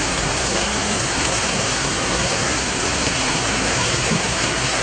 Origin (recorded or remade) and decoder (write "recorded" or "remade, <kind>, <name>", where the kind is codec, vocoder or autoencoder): remade, codec, SNAC